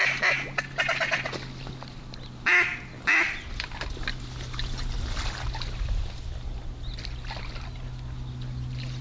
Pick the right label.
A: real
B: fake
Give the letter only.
A